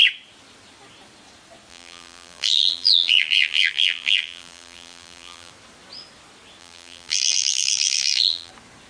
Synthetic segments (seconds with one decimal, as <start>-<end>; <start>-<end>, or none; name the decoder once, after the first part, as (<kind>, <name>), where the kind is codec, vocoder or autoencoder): 1.7-5.5 (vocoder, BigVGAN v2); 6.6-8.5